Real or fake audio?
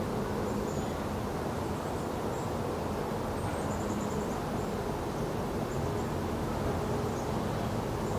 real